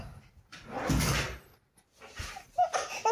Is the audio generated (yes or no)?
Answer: no